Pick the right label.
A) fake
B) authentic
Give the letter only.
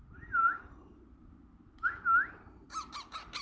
B